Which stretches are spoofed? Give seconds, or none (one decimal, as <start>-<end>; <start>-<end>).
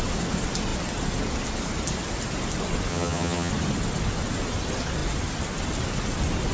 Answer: 2.9-3.5